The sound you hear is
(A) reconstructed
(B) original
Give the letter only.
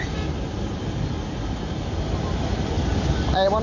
B